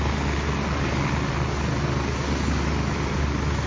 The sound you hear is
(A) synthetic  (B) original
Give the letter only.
B